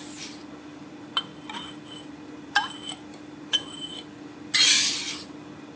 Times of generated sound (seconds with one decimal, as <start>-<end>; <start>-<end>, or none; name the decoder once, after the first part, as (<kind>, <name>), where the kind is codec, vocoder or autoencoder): none